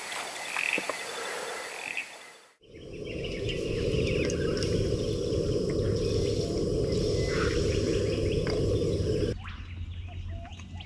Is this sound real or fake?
real